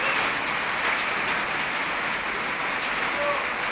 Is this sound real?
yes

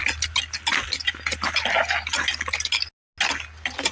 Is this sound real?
yes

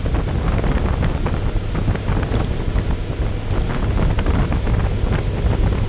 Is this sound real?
yes